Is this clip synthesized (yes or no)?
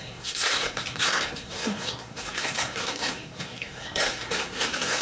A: yes